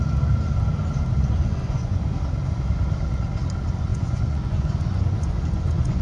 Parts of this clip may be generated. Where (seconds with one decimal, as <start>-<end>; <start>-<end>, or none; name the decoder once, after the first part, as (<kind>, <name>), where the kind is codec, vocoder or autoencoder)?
1.4-2.0 (vocoder, Vocos); 3.9-6.0